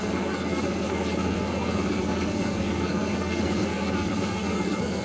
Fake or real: fake